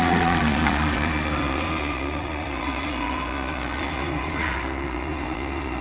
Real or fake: fake